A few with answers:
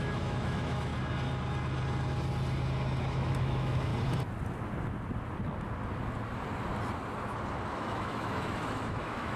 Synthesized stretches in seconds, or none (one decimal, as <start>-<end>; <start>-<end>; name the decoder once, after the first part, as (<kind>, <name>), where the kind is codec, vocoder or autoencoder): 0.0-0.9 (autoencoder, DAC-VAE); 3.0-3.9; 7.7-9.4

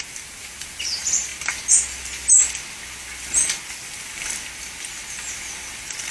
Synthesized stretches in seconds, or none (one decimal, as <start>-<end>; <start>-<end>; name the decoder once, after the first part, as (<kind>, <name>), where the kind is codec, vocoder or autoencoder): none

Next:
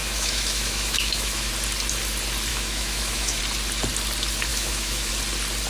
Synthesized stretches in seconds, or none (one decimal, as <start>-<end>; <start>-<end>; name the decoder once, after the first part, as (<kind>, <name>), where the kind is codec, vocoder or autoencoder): 0.0-1.5 (autoencoder, DAC-VAE); 2.5-3.4; 4.5-5.1